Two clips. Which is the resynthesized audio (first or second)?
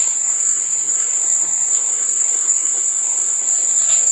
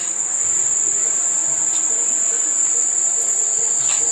first